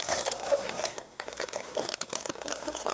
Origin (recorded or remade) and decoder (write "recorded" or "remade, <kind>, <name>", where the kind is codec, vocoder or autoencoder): remade, codec, SNAC